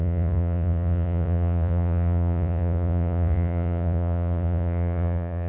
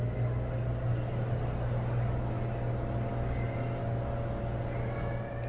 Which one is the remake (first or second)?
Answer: first